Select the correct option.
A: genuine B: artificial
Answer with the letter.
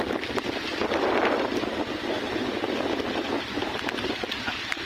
A